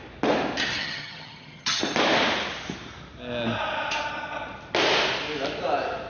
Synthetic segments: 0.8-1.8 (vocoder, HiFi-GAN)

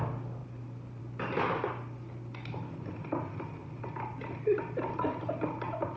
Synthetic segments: none

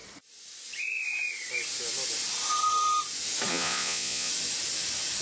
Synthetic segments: 3.5-4.3 (vocoder, Vocos)

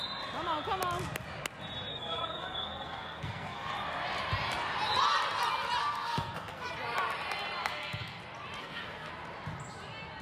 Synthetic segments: 1.9-3.7 (codec, SNAC); 5.8-6.7; 7.6-8.2; 8.6-9.1

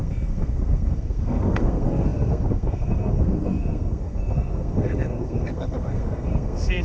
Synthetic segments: 0.0-6.8 (codec, SNAC)

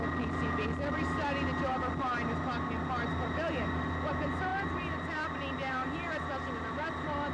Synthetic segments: none

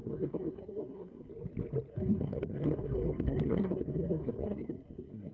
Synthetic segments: 0.0-1.3 (codec, SNAC); 1.9-5.3